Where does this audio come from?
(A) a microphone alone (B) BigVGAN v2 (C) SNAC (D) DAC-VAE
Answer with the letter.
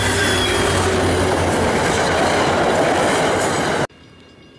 A